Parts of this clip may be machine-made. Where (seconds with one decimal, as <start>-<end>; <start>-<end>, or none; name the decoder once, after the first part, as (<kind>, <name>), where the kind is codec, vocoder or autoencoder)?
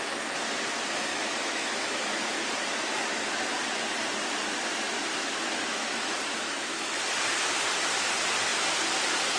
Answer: 1.1-2.5 (autoencoder, DAC-VAE); 5.1-7.0